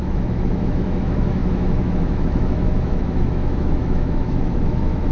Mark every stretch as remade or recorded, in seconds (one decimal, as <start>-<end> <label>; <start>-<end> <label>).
0.0-5.1 remade

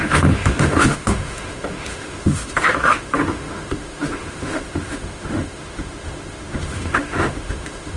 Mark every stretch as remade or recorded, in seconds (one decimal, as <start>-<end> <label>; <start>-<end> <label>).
0.0-8.0 remade

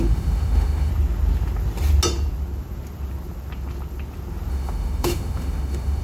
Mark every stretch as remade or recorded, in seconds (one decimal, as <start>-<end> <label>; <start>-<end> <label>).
0.0-0.9 remade; 0.9-4.5 recorded; 4.5-6.0 remade

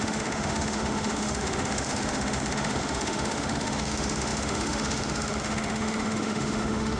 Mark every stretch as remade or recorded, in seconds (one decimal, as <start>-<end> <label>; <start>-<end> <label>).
0.0-7.0 remade

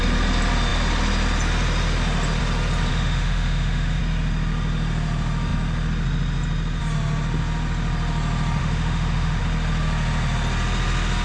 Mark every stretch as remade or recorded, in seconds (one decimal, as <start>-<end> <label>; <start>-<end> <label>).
0.0-2.9 recorded; 2.9-4.0 remade; 4.0-8.6 recorded; 8.6-9.4 remade; 9.4-11.2 recorded

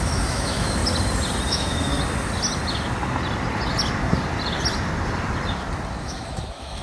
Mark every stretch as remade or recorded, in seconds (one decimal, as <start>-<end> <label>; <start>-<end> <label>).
0.0-0.8 remade; 0.8-1.5 recorded; 1.5-1.9 remade; 1.9-6.0 recorded; 6.0-6.8 remade